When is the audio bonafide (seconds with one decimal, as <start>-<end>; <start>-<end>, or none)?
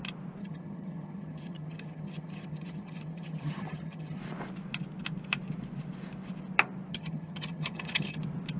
0.0-0.4; 4.2-6.9; 8.2-8.6